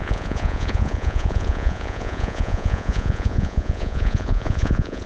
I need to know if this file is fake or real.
fake